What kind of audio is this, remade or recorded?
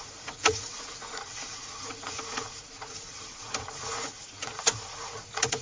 remade